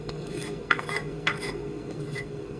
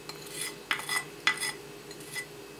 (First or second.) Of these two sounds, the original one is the second